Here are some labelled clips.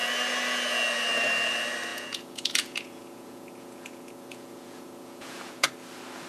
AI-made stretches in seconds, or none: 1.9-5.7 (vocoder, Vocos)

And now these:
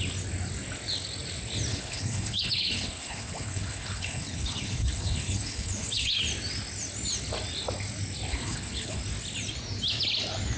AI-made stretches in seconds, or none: 1.7-6.2 (codec, HILCodec); 8.3-9.0

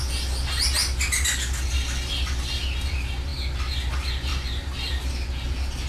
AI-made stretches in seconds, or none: none

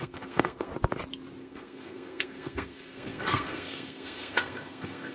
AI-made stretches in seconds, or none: 0.0-0.7 (codec, SNAC); 1.4-5.1

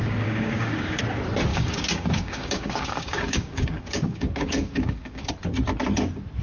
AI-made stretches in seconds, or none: 0.0-1.0 (codec, DAC); 1.5-5.3

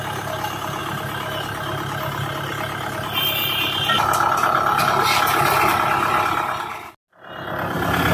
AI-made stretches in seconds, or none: none